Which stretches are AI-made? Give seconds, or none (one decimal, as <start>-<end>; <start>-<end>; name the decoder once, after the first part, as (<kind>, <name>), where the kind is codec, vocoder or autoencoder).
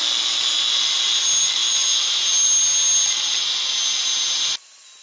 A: none